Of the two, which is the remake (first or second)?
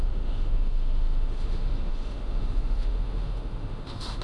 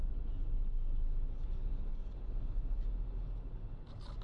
first